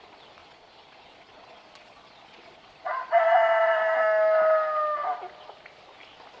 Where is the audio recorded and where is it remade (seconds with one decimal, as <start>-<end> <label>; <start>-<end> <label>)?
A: 0.0-0.4 recorded; 0.4-3.2 remade; 3.2-6.4 recorded